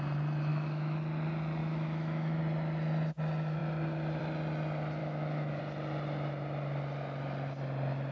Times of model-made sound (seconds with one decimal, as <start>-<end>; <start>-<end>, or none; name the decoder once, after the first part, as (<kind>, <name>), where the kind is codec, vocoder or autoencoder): 0.5-1.0 (autoencoder, DAC-VAE); 1.6-2.4; 5.0-5.6